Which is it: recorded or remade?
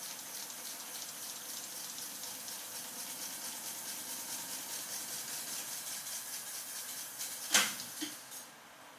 recorded